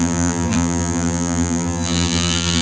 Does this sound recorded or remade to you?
remade